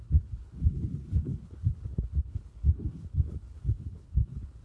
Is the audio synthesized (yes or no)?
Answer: yes